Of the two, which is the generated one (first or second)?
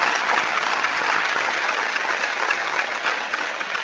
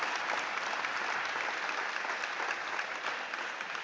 first